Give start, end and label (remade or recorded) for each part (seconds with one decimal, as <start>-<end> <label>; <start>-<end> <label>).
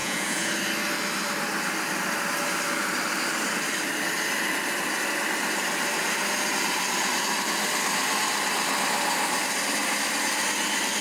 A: 0.0-0.5 remade; 0.5-11.0 recorded